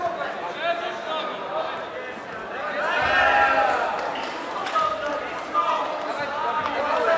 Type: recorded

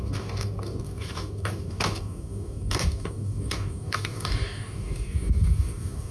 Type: remade